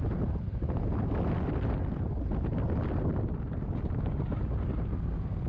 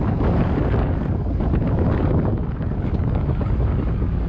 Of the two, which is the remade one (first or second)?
second